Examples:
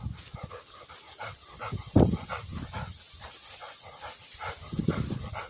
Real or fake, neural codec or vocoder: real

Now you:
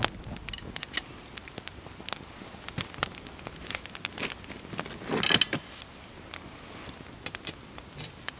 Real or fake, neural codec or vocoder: real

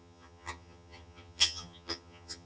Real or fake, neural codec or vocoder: fake, vocoder, HiFi-GAN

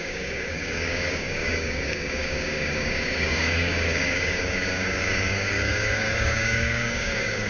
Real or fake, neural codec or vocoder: fake, codec, DAC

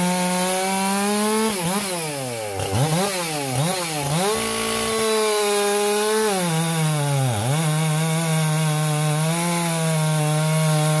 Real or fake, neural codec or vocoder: real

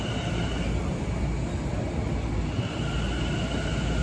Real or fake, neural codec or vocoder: real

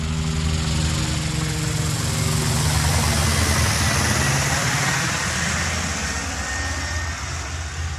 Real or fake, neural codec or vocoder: real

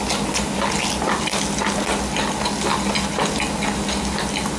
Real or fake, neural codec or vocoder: real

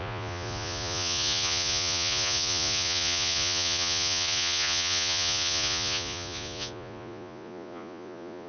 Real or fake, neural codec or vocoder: fake, vocoder, Vocos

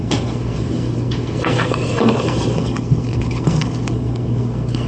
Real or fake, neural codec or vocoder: fake, codec, SNAC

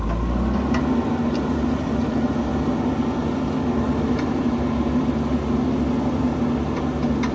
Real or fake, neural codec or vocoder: real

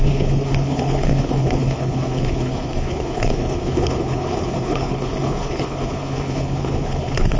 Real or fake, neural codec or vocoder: fake, codec, HILCodec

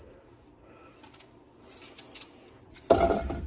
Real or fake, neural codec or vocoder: real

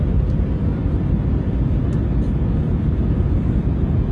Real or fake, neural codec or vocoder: real